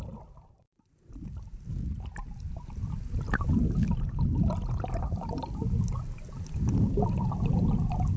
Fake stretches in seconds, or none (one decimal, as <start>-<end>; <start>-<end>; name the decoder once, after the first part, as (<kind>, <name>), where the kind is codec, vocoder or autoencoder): none

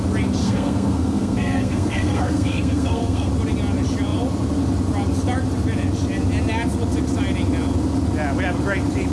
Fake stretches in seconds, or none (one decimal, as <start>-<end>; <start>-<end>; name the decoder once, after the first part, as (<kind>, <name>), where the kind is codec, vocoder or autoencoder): 0.4-3.3 (codec, SNAC)

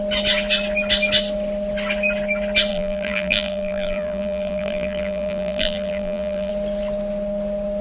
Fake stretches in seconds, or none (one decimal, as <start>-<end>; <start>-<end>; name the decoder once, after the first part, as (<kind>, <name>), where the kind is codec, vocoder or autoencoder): 2.7-6.5 (vocoder, BigVGAN v2)